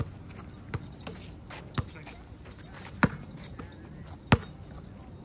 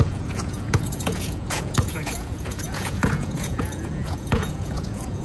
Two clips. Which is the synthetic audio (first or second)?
second